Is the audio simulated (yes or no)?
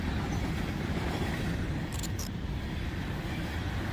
yes